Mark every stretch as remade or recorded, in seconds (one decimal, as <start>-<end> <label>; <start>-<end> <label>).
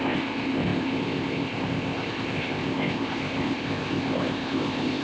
0.0-5.0 remade